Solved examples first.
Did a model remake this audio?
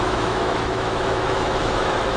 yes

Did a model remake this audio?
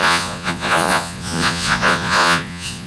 yes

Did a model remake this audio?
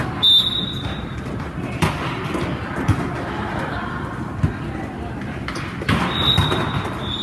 no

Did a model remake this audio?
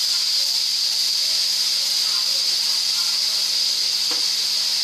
no